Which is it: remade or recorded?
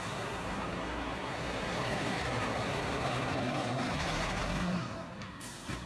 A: remade